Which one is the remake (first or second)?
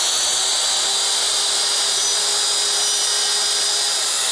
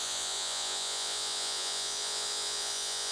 second